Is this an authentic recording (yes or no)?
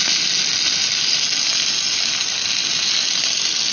yes